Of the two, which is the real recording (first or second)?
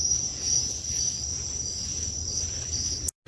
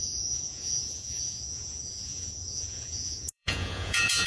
first